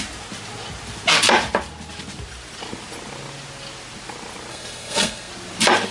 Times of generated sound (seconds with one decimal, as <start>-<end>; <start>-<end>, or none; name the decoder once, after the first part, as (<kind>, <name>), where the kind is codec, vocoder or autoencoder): 4.5-5.3 (codec, SNAC)